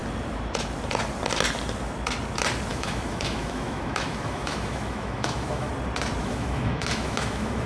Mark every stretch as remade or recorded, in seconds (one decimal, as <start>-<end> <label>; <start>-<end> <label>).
0.0-2.7 recorded; 2.7-5.7 remade; 5.7-6.2 recorded; 6.2-7.7 remade

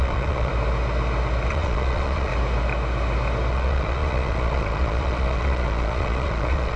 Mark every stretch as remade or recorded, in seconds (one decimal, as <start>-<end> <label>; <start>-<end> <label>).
0.0-0.5 remade; 0.5-1.5 recorded; 1.5-2.3 remade; 2.3-3.5 recorded; 3.5-6.8 remade

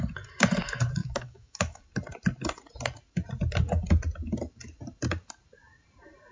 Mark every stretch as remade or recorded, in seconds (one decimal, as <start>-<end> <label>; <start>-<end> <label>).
0.0-1.0 recorded; 1.0-1.8 remade; 1.8-6.3 recorded